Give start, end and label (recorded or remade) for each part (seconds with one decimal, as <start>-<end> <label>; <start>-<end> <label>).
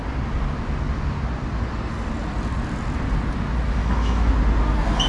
0.0-3.8 recorded; 3.8-4.3 remade; 4.3-5.1 recorded